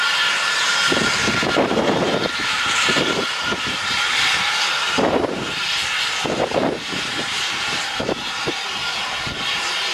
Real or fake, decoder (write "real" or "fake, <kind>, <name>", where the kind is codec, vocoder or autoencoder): fake, vocoder, BigVGAN v2